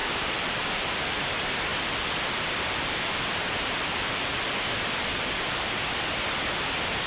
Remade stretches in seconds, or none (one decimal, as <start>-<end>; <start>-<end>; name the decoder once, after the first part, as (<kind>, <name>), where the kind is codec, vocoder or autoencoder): 0.0-1.2 (vocoder, BigVGAN v2); 1.7-5.9

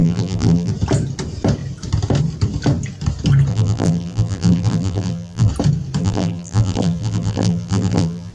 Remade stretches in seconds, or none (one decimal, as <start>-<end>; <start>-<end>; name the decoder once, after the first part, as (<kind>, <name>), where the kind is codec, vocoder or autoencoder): 0.0-0.7 (vocoder, BigVGAN v2); 3.5-5.5; 6.0-8.3

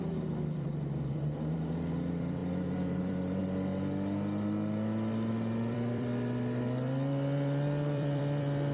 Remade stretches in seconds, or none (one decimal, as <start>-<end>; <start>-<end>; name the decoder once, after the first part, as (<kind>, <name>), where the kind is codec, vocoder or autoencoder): 0.0-3.4 (vocoder, BigVGAN v2); 5.3-8.7

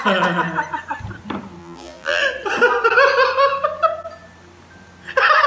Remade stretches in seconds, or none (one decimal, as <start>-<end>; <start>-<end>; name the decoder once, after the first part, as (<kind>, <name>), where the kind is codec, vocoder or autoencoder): 1.6-2.2 (vocoder, BigVGAN v2)

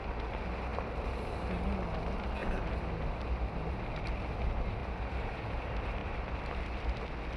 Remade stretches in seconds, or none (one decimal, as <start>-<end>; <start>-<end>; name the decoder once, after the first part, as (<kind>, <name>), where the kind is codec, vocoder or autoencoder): 0.7-1.3 (vocoder, BigVGAN v2); 4.8-5.4; 6.0-7.0